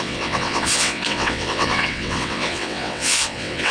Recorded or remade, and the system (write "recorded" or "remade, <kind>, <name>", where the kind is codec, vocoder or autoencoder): remade, vocoder, WaveNeXt